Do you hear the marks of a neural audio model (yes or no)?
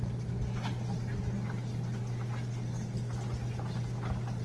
no